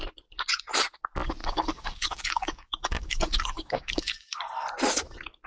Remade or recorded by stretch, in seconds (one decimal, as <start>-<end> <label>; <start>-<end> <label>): 0.0-1.4 recorded; 1.4-4.4 remade; 4.4-5.5 recorded